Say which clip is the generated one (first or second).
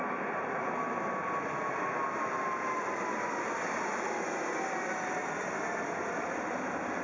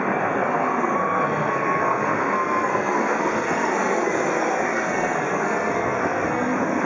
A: second